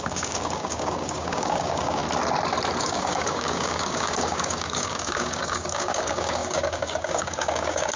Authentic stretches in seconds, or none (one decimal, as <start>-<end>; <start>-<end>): 2.0-2.8